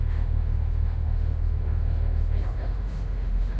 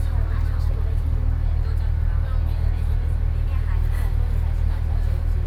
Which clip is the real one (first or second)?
second